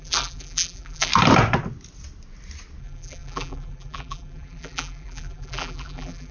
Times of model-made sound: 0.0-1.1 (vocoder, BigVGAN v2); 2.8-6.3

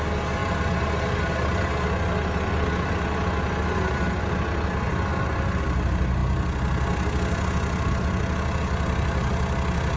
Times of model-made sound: 5.1-5.6 (vocoder, BigVGAN v2)

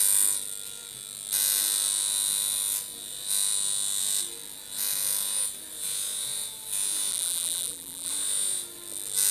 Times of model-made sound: 7.1-8.1 (vocoder, BigVGAN v2)

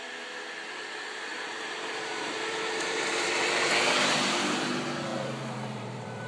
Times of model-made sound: 1.3-3.7 (vocoder, BigVGAN v2); 5.1-6.3

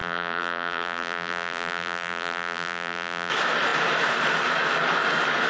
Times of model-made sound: 0.0-3.3 (vocoder, BigVGAN v2)